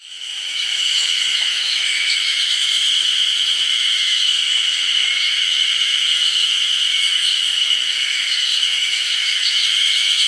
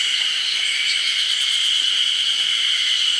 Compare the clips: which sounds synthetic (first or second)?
first